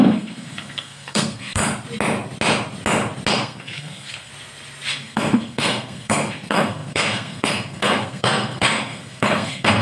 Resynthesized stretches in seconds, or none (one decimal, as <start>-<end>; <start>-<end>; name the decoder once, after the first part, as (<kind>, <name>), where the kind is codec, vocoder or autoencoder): 0.0-1.6 (codec, SNAC); 3.3-4.3; 4.9-9.8